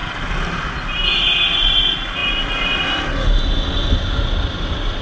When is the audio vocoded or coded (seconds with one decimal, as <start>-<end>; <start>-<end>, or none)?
none